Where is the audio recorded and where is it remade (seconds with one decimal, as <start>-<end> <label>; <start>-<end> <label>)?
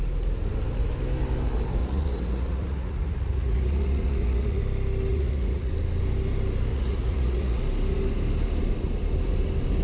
0.0-1.8 recorded; 1.8-4.6 remade; 4.6-5.1 recorded; 5.1-5.7 remade; 5.7-6.7 recorded; 6.7-7.6 remade; 7.6-9.8 recorded